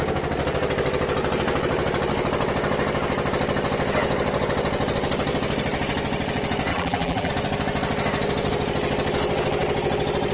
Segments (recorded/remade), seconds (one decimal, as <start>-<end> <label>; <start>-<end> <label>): 0.0-6.7 recorded; 6.7-7.3 remade; 7.3-10.3 recorded